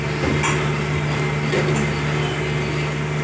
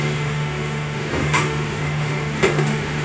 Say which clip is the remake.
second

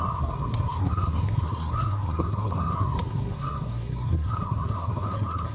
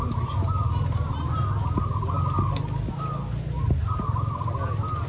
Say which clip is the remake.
first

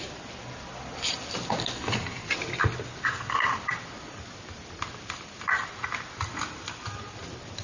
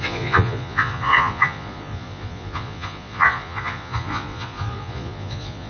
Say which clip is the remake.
second